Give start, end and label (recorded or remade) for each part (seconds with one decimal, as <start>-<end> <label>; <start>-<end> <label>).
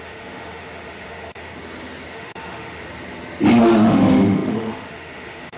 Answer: 0.0-1.5 remade; 1.5-2.1 recorded; 2.1-2.8 remade; 2.8-3.6 recorded; 3.6-5.6 remade